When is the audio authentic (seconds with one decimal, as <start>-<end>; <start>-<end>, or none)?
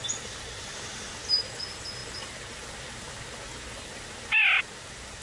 0.0-5.2